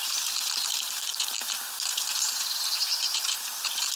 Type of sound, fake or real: fake